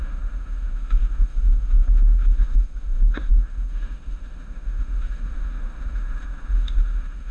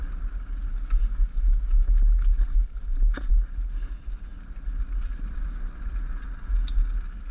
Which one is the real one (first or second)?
second